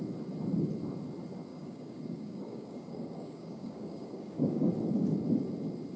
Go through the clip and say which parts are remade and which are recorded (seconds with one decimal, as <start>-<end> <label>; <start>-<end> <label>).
0.0-1.5 recorded; 1.5-4.7 remade; 4.7-6.0 recorded